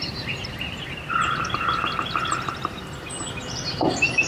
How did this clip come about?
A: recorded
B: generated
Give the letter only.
A